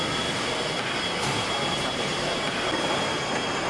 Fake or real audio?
real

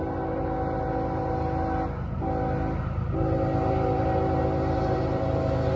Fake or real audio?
real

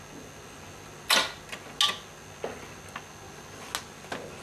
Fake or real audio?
real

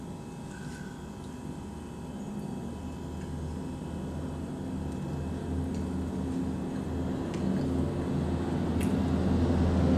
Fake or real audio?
real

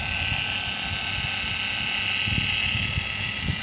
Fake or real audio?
real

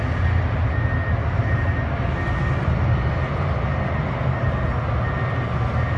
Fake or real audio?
real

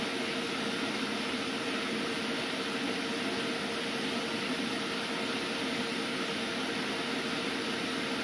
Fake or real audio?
real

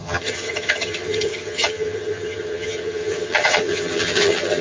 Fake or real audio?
fake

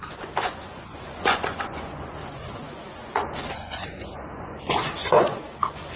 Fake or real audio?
fake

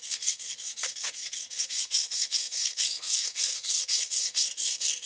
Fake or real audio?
fake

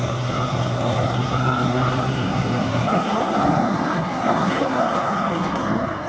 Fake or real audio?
fake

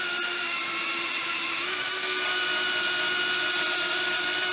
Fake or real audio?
real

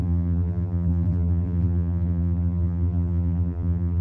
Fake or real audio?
fake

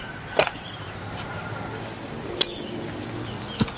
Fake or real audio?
real